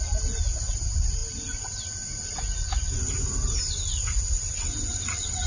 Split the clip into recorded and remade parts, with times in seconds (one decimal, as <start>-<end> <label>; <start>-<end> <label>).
0.0-5.5 recorded